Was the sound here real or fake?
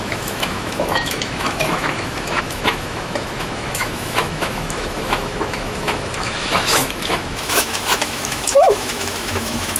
fake